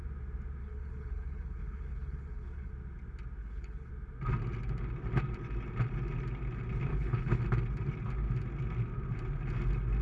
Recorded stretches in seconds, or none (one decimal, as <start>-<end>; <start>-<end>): 0.0-0.6; 2.7-3.4; 3.9-6.9; 7.4-10.0